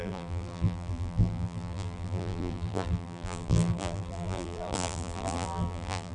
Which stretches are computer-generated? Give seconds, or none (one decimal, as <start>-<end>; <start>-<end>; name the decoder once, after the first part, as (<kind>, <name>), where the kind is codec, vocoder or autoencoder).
0.0-6.1 (vocoder, BigVGAN v2)